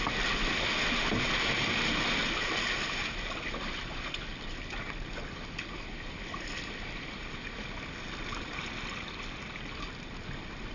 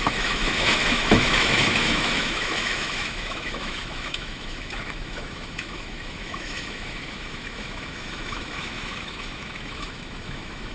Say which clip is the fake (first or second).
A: second